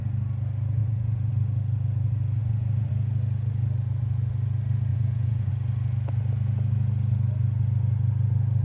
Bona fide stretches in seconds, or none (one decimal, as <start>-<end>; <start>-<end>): 0.0-0.8; 1.3-2.4; 2.9-4.9; 5.5-8.6